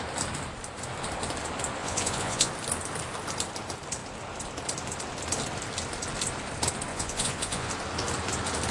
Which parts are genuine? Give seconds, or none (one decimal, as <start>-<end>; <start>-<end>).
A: 0.0-1.8; 2.5-6.9; 7.7-8.7